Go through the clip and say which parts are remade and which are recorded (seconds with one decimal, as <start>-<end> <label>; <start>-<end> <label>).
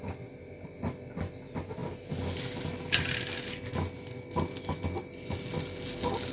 0.0-6.3 recorded